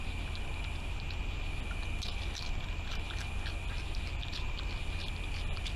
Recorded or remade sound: recorded